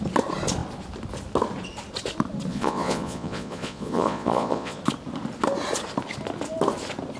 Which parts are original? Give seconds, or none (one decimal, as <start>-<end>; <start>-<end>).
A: 0.0-2.5; 4.8-7.2